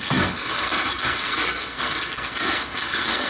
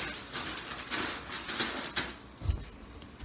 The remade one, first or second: first